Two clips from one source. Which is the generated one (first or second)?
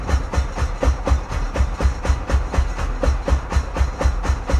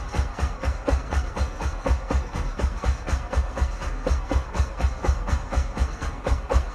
second